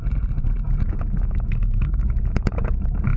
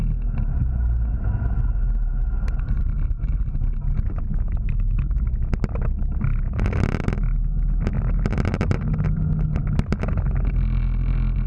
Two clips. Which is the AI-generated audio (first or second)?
first